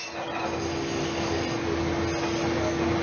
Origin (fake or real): real